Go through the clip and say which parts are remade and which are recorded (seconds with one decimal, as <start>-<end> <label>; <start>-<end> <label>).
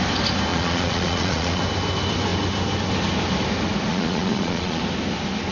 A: 0.0-0.5 recorded; 0.5-1.6 remade; 1.6-3.9 recorded; 3.9-4.8 remade; 4.8-5.5 recorded